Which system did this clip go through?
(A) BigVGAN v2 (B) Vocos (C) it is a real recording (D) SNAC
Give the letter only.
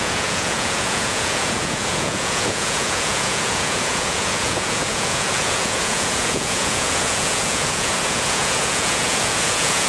B